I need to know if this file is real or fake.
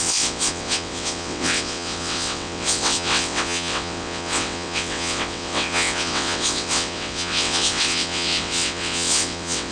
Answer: fake